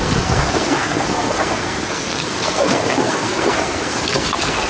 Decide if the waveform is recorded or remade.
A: remade